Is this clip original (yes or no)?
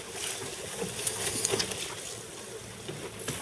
yes